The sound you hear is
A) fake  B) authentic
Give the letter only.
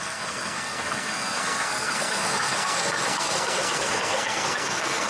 A